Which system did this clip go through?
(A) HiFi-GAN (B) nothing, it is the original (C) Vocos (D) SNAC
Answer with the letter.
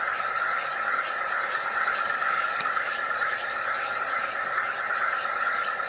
B